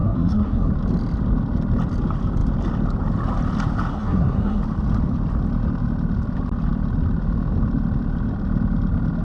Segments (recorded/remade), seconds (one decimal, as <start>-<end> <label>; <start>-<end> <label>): 0.0-0.7 remade; 0.7-3.9 recorded; 3.9-4.6 remade; 4.6-9.2 recorded